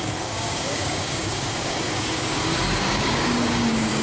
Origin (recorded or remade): remade